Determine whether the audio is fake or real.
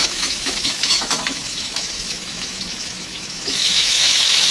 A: fake